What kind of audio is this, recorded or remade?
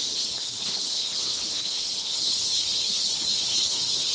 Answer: remade